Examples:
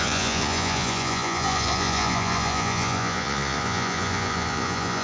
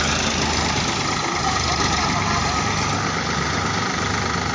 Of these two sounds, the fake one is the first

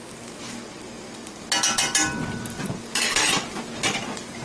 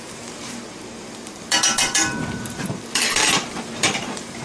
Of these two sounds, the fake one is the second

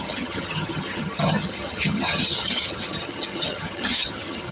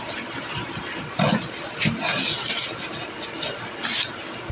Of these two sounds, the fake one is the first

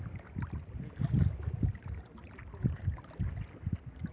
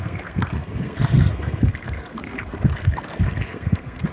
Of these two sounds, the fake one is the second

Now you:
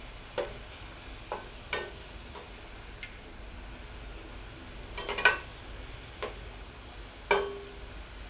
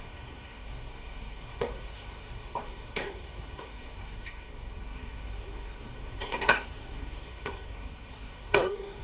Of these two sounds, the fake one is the second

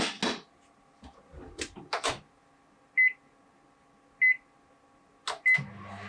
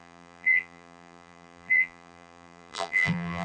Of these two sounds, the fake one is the second